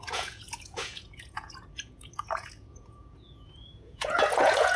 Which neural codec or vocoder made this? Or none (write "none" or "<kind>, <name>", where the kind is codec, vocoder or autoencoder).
vocoder, Vocos